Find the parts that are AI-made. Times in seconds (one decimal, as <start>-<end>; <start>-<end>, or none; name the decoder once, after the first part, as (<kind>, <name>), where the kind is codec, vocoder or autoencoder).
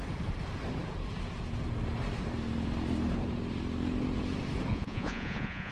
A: 4.7-5.7 (vocoder, Vocos)